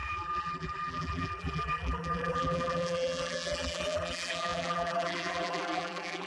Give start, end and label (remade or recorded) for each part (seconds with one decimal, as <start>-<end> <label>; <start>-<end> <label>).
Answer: 0.0-6.3 remade